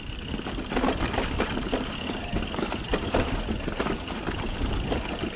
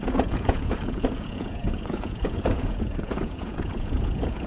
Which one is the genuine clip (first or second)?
first